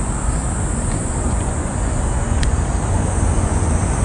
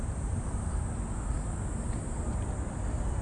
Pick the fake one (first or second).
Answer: first